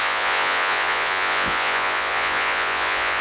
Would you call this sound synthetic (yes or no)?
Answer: yes